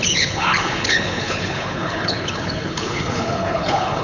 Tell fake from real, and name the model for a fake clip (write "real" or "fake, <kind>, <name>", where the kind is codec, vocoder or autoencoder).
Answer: fake, codec, HILCodec